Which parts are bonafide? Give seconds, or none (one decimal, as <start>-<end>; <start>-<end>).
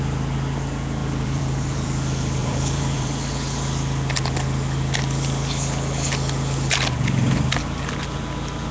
0.0-1.0; 1.9-2.4; 3.1-8.7